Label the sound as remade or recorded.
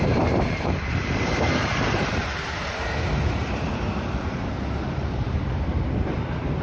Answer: remade